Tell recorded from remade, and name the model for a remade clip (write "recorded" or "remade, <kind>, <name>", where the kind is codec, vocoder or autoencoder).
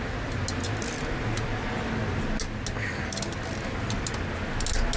recorded